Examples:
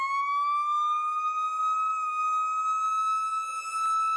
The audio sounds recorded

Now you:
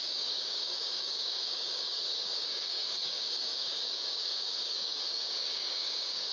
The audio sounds remade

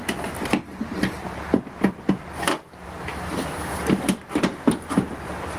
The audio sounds recorded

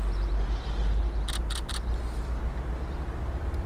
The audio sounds recorded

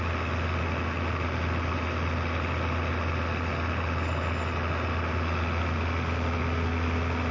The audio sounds recorded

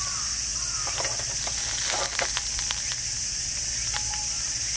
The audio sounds recorded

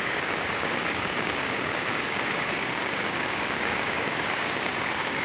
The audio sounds remade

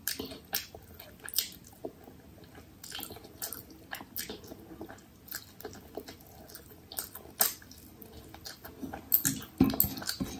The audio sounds recorded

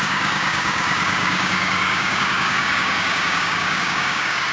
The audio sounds remade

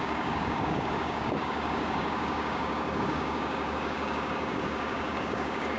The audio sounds remade